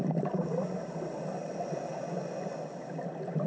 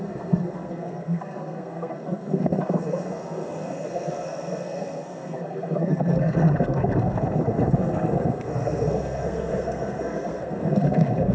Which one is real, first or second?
first